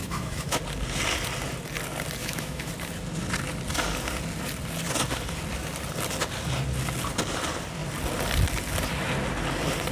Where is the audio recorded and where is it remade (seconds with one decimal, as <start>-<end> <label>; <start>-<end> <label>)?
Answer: 0.0-0.6 remade; 0.6-2.2 recorded; 2.2-2.7 remade; 2.7-9.9 recorded